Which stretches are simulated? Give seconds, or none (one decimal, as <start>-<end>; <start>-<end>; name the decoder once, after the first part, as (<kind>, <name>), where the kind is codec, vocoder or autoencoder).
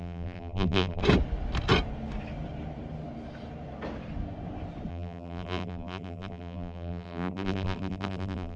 0.0-1.0 (vocoder, BigVGAN v2); 4.9-8.6